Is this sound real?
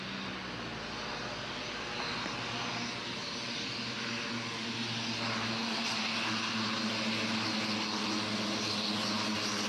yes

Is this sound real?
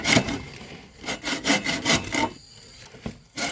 yes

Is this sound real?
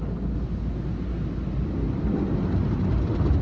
yes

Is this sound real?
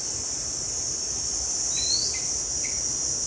yes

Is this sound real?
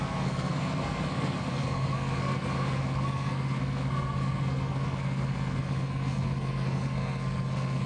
no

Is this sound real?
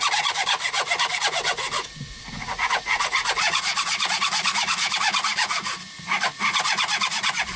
no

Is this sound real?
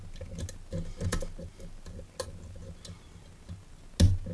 yes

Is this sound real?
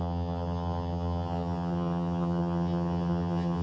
no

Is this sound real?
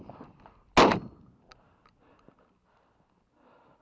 yes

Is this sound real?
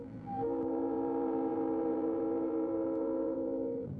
no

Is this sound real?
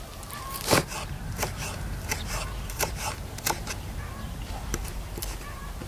no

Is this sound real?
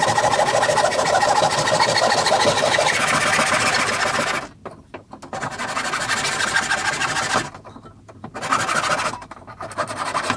yes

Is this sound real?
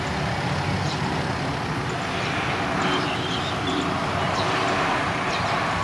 yes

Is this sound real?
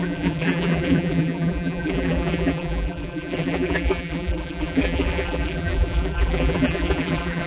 no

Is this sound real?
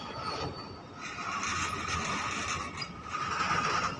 yes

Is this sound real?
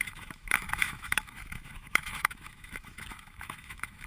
no